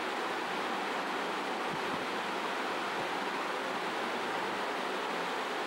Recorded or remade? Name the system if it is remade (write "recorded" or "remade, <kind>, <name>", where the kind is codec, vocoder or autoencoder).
recorded